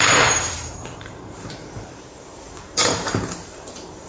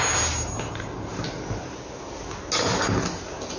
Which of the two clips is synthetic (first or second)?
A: first